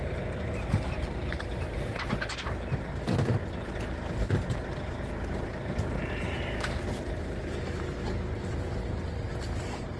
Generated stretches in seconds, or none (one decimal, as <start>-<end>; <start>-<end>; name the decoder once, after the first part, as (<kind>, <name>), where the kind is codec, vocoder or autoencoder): 0.0-3.4 (vocoder, BigVGAN v2); 8.5-10.0